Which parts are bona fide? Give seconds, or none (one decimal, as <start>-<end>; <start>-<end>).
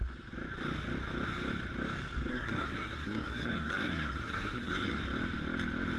0.0-2.3; 5.0-6.0